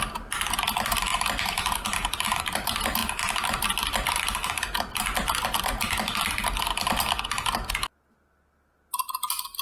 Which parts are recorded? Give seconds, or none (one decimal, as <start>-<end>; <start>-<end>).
0.0-9.6